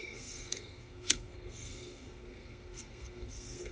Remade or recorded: remade